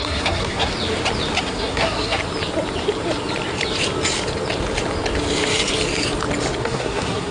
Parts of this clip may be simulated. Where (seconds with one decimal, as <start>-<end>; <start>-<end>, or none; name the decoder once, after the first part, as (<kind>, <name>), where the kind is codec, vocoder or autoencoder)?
0.0-0.7 (codec, SNAC); 1.4-2.2; 6.6-7.3